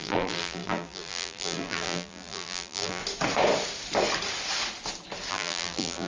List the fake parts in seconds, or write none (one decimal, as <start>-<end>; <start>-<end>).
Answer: 0.0-3.0; 5.3-6.1